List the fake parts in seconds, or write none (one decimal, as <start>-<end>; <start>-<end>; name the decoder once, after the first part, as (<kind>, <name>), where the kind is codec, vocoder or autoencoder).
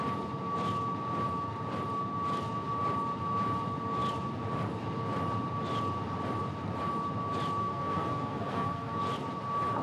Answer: 7.6-9.0 (codec, SNAC)